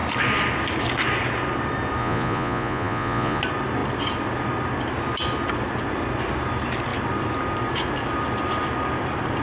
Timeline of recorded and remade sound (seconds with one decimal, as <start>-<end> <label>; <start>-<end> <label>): 0.0-2.0 recorded; 2.0-3.4 remade; 3.4-9.4 recorded